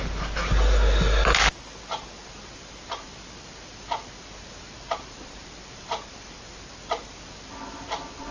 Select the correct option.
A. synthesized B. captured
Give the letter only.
B